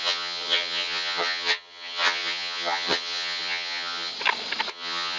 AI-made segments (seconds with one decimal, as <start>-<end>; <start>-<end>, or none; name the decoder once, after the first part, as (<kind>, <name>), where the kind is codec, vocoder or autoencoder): 0.0-4.1 (vocoder, HiFi-GAN); 4.7-5.2